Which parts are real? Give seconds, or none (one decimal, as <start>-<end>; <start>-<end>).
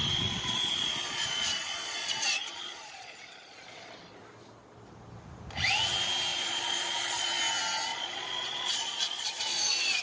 3.9-6.3; 7.4-7.9